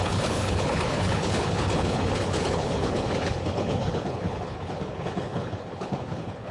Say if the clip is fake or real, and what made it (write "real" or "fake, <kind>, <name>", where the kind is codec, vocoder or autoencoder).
fake, codec, HILCodec